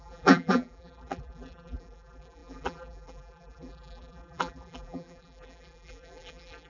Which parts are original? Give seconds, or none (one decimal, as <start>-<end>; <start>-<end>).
none

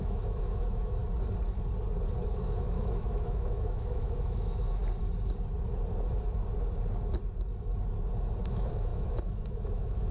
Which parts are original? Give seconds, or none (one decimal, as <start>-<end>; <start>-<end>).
1.0-2.3; 4.8-8.5

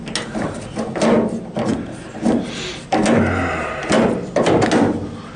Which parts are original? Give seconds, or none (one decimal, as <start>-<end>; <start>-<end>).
0.0-5.4